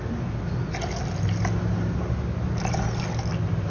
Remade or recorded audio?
recorded